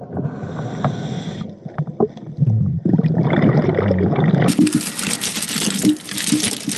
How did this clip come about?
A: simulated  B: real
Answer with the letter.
B